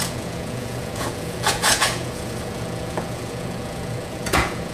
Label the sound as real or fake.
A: fake